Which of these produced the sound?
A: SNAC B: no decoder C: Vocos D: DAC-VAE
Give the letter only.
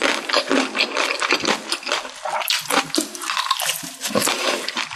B